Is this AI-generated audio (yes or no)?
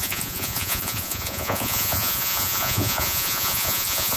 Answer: yes